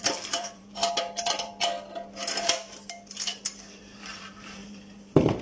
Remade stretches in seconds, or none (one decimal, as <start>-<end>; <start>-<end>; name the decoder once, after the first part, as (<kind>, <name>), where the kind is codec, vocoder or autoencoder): 0.0-1.5 (vocoder, BigVGAN v2); 3.8-5.4